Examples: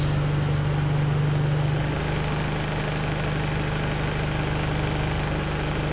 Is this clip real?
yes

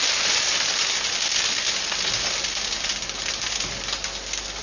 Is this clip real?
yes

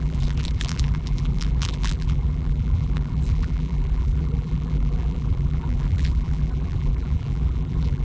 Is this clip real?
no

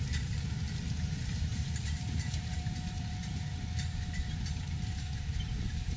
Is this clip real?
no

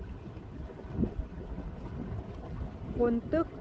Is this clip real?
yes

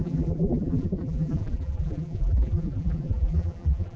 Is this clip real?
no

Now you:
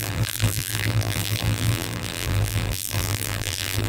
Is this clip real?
no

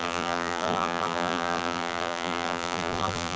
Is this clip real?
no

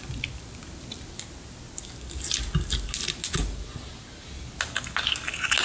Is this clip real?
yes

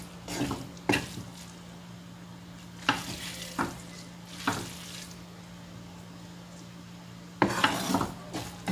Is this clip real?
yes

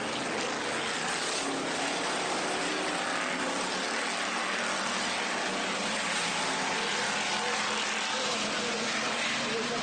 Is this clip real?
yes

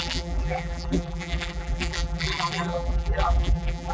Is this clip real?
no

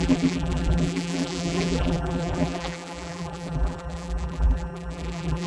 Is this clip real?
no